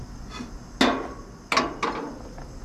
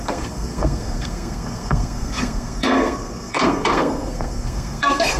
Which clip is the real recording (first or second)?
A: first